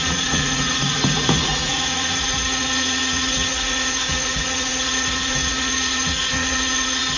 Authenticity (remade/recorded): remade